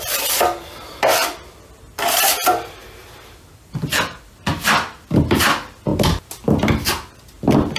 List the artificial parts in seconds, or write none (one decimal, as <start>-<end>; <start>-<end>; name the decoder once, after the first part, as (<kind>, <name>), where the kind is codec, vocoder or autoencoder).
0.0-1.2 (vocoder, BigVGAN v2); 3.7-5.9